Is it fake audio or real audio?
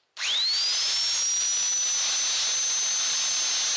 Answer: real